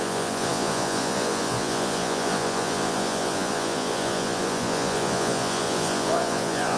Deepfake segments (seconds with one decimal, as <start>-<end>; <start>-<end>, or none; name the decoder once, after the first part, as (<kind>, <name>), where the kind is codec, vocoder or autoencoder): 0.0-6.8 (vocoder, Vocos)